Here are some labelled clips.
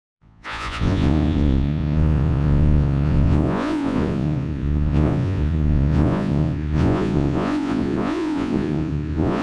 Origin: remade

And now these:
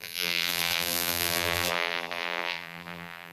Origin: remade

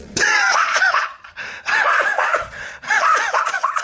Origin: remade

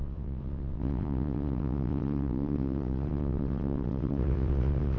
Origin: remade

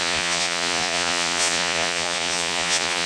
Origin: remade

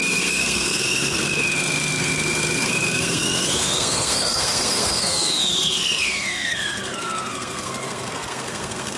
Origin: remade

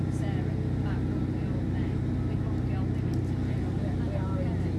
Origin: recorded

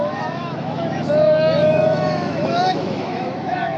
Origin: remade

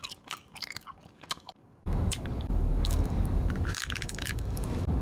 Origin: remade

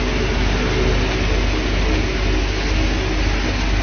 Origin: recorded